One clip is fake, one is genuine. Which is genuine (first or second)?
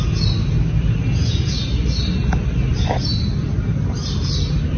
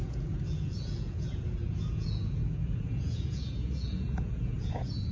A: first